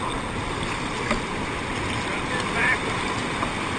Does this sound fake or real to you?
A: real